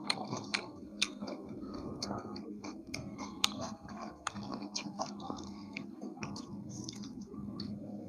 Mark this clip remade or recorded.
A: remade